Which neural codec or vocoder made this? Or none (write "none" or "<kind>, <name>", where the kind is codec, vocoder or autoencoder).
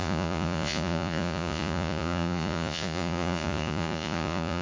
vocoder, Vocos